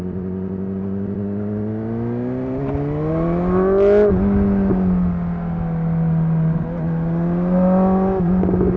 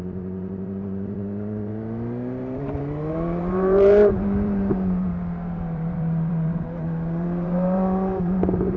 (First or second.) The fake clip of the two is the second